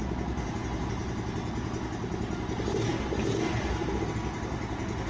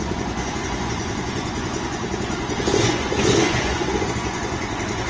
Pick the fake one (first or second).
second